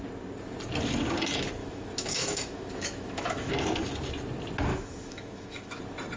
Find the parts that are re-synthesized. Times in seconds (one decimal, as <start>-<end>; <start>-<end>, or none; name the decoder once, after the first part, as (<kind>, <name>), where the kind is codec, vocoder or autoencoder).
1.6-3.5 (autoencoder, DAC-VAE); 4.7-5.8